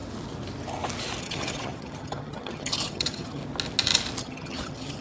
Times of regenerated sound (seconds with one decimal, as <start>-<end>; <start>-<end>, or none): 1.2-3.4; 4.2-5.0